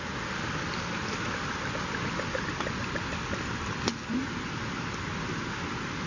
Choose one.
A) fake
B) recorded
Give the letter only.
B